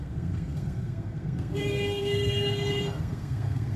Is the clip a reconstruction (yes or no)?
yes